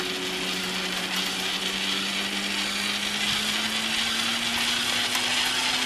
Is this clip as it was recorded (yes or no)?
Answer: yes